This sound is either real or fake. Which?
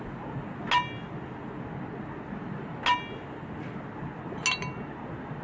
real